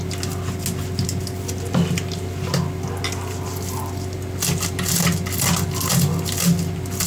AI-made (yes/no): no